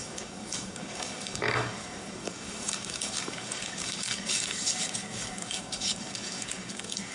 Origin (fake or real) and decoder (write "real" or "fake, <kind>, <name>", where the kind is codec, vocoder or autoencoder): fake, codec, DAC